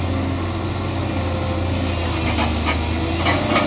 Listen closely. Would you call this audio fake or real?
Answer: real